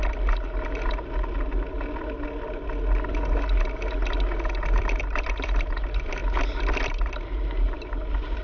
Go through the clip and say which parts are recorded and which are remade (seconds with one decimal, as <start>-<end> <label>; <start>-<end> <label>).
0.0-5.0 recorded; 5.0-6.2 remade; 6.2-6.9 recorded; 6.9-8.4 remade